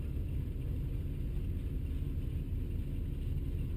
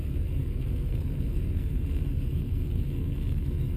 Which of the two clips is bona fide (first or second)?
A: first